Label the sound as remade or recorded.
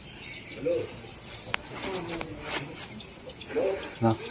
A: recorded